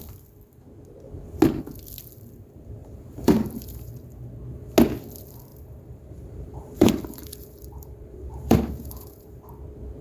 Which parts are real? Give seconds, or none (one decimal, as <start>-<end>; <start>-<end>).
0.0-2.8; 3.9-5.5; 9.4-10.0